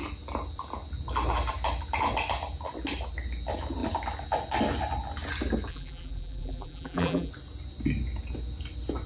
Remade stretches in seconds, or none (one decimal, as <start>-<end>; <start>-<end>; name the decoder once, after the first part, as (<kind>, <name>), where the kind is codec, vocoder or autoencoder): 5.7-7.3 (vocoder, BigVGAN v2)